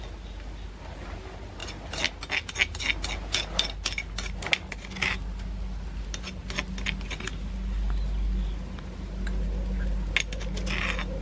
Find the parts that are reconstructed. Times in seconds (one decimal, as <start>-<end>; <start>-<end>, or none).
none